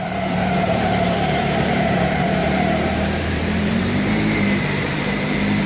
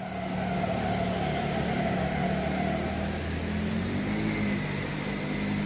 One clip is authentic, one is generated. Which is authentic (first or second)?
second